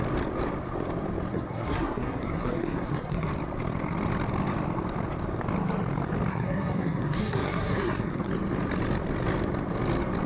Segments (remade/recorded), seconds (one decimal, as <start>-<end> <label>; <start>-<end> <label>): 0.0-1.3 recorded; 1.3-3.3 remade; 3.3-6.3 recorded; 6.3-8.3 remade; 8.3-10.3 recorded